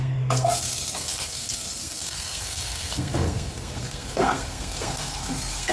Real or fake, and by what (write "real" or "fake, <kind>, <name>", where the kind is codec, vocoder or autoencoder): fake, codec, SNAC